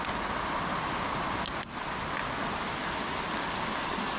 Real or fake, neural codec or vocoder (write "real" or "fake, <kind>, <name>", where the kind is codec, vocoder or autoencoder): real